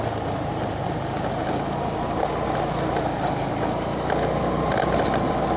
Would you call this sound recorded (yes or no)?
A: yes